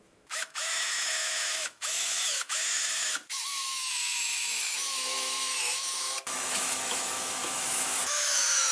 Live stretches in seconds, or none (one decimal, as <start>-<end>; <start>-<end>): none